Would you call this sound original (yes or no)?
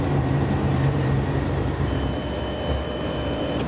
no